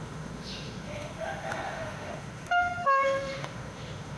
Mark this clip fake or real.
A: fake